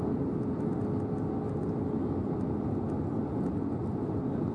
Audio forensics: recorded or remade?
recorded